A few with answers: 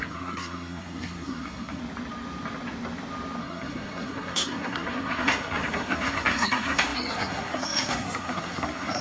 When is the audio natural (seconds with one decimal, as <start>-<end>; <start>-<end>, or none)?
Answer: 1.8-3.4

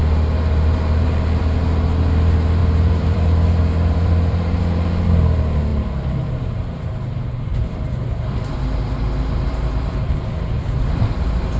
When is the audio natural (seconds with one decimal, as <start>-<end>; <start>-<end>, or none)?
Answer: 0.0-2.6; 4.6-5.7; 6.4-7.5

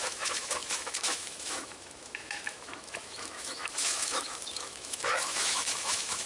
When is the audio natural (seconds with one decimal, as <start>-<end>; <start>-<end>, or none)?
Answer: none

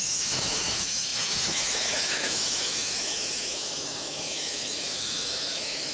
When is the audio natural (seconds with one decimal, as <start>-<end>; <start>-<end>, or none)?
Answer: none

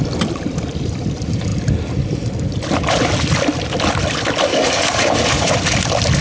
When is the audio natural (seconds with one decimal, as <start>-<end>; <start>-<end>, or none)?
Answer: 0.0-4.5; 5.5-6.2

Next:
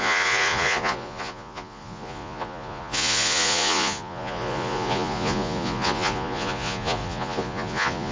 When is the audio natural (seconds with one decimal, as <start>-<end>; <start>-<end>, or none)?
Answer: none

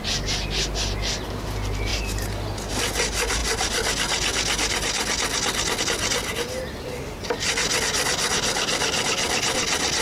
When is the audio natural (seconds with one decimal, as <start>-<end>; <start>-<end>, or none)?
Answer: 0.0-10.0